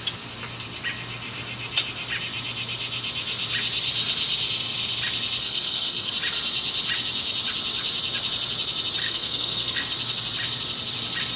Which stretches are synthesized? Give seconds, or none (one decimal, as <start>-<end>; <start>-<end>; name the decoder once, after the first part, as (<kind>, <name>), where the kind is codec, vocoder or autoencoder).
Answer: 5.4-6.1 (codec, SNAC); 9.0-9.9